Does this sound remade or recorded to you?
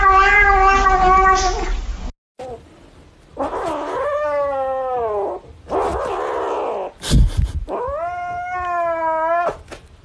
recorded